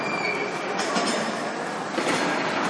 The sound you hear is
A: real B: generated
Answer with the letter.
A